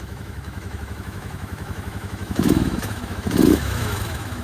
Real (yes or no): no